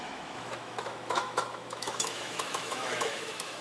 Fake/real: fake